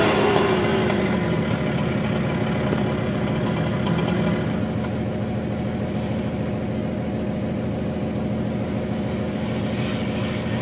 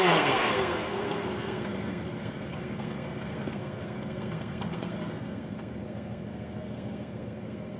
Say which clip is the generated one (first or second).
second